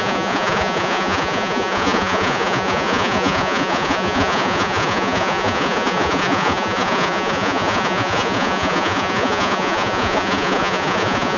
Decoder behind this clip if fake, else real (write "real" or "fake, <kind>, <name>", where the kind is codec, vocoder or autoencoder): fake, vocoder, Vocos